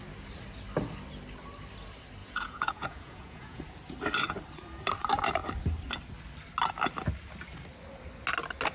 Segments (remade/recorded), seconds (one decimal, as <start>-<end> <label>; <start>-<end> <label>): 0.0-2.2 recorded; 2.2-3.6 remade; 3.6-8.7 recorded